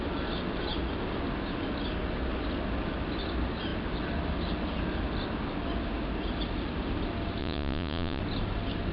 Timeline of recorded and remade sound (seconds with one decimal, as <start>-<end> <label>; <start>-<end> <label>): 0.0-7.4 recorded; 7.4-8.2 remade; 8.2-8.9 recorded